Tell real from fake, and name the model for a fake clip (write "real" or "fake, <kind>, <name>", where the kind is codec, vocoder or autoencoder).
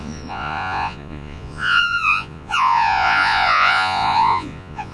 fake, vocoder, Vocos